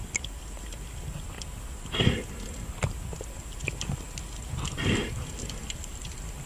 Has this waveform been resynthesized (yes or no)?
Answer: no